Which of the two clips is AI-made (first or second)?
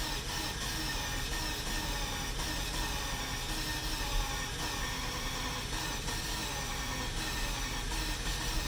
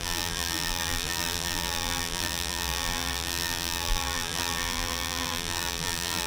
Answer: second